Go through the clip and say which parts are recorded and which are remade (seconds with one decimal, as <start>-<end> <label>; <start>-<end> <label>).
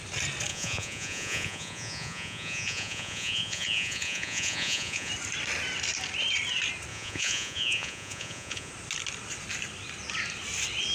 0.0-0.5 recorded; 0.5-5.1 remade; 5.1-6.9 recorded; 6.9-8.7 remade; 8.7-10.9 recorded